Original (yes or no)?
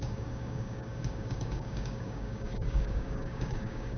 no